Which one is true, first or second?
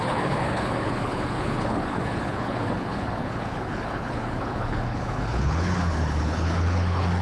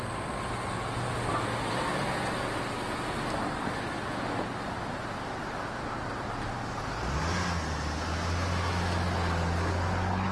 second